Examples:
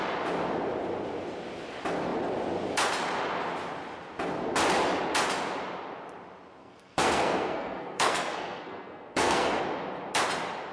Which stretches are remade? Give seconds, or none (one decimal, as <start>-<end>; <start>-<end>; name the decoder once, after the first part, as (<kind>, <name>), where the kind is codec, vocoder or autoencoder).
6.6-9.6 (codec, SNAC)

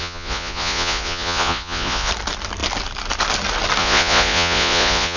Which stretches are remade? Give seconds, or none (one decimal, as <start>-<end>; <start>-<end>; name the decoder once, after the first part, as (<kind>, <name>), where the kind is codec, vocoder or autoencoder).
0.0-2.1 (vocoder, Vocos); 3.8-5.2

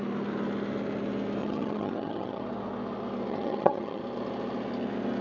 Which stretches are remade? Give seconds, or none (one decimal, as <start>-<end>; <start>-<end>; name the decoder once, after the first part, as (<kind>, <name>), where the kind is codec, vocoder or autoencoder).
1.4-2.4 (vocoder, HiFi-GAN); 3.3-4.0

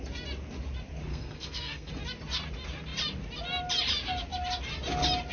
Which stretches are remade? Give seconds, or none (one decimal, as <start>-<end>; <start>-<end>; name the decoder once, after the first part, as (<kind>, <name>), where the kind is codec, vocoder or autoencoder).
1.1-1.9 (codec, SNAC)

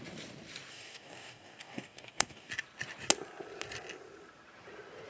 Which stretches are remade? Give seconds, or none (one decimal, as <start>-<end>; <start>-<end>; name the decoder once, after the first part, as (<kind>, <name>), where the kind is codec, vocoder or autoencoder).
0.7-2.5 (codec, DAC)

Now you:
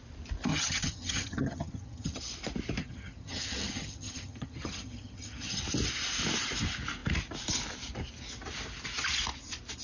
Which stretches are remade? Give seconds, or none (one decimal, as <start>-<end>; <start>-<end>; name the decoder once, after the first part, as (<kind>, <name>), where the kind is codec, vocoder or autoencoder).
0.5-2.2 (vocoder, HiFi-GAN); 2.8-5.6